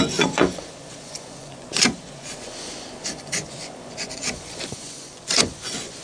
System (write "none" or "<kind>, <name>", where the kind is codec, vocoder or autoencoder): vocoder, Vocos